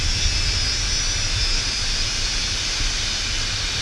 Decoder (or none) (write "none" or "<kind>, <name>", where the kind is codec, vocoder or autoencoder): none